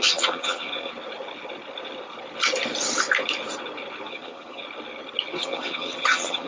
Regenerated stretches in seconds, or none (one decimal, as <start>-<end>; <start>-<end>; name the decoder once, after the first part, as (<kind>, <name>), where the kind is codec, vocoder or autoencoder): 0.0-0.9 (vocoder, HiFi-GAN); 4.1-4.6; 5.4-6.5